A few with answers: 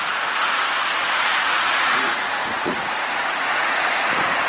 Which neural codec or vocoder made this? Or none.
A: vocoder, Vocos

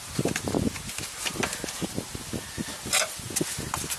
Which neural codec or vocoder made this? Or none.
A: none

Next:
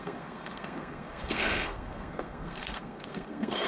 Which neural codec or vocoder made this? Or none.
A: codec, SNAC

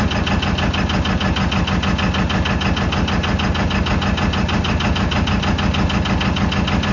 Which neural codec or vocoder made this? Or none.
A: none